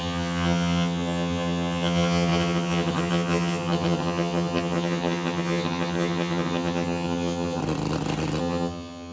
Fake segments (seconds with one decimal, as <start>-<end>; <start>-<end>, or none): 0.0-7.6; 8.4-9.1